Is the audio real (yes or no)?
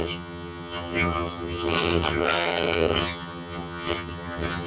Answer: no